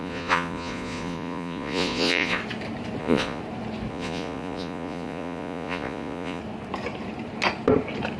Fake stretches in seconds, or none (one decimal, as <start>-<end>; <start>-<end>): 0.0-2.4; 3.0-3.4; 3.9-6.4